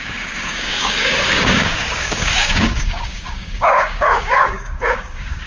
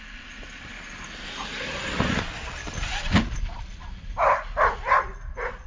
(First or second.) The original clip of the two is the second